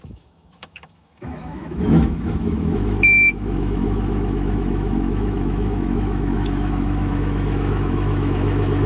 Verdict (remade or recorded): remade